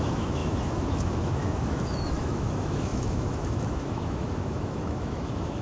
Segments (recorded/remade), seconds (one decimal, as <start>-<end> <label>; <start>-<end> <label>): 0.0-5.6 remade